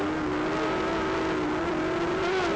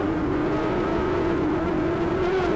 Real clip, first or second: first